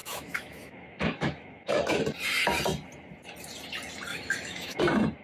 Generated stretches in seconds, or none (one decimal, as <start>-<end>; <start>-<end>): 0.0-2.0; 4.1-4.8